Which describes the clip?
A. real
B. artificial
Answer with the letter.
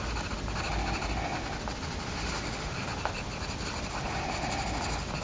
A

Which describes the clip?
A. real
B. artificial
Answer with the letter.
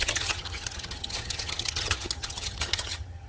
B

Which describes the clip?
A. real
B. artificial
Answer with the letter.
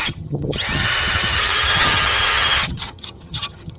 B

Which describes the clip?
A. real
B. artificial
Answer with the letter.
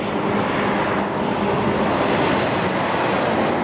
A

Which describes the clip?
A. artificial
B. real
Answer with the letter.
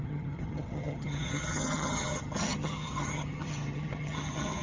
A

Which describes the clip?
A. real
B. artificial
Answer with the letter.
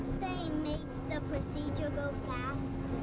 A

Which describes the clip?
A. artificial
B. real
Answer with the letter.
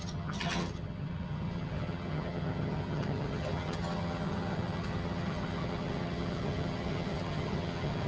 A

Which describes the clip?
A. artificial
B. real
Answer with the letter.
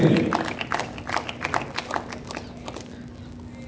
B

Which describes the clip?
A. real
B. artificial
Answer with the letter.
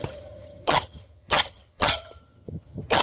B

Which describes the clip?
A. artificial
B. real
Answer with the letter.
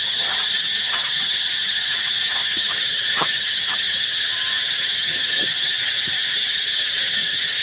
A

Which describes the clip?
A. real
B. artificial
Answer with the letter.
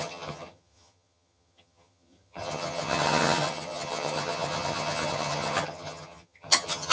B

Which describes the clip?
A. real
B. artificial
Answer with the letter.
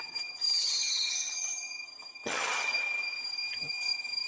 B